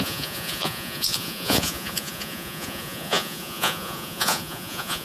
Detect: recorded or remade remade